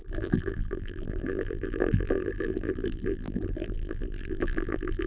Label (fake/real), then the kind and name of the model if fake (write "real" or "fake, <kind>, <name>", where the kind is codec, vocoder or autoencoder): fake, vocoder, BigVGAN v2